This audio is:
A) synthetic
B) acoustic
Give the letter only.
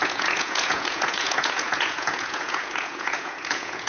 A